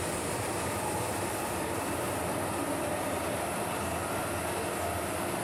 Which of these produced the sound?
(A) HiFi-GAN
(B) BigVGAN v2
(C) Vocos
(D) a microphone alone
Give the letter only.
D